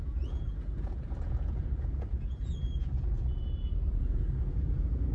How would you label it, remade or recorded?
remade